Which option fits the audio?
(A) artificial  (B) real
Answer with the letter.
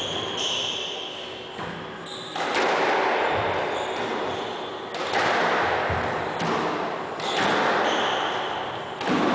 B